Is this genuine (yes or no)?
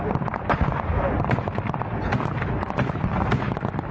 yes